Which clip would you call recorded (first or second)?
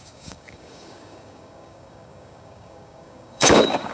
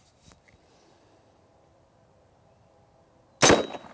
second